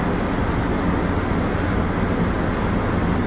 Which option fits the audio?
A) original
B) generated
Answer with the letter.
A